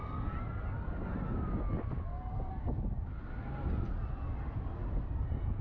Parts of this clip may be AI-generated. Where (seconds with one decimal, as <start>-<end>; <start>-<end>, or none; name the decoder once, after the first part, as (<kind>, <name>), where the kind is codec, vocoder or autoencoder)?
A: 4.8-5.6 (vocoder, BigVGAN v2)